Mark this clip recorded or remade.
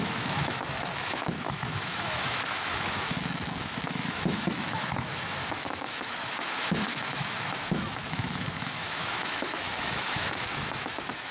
remade